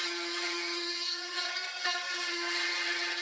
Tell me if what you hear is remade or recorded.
remade